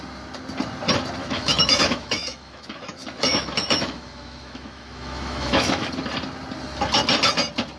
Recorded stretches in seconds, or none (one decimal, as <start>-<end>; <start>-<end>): 0.0-1.2; 5.9-7.8

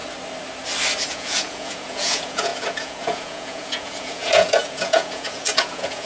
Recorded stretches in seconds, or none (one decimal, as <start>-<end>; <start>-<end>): 0.0-1.1

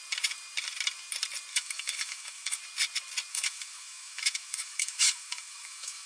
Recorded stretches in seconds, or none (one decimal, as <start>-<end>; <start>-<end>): 0.0-1.5; 2.6-3.3

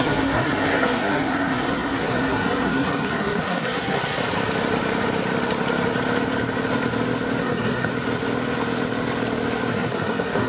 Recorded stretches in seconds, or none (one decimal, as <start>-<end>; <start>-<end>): 4.2-7.4; 7.9-9.7

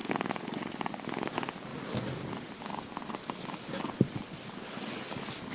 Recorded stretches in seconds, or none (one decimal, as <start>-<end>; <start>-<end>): 0.9-5.5

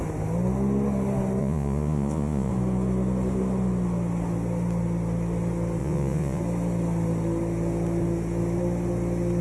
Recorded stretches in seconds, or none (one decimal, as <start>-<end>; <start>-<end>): 0.0-1.4; 2.5-5.8; 6.4-9.4

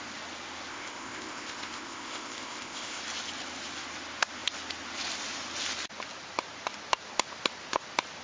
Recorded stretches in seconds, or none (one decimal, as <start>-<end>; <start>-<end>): 0.0-0.7; 3.0-8.2

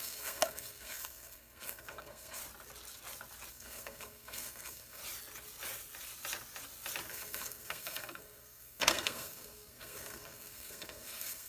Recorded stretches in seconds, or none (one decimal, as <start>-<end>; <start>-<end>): 2.4-3.5; 5.0-7.1